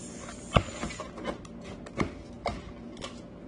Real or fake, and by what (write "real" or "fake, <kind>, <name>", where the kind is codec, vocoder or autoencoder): real